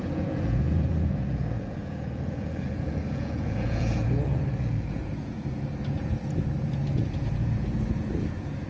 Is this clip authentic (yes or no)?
no